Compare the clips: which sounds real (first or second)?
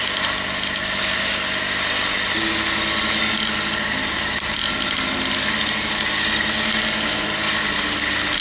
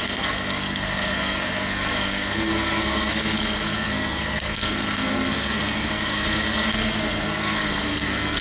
first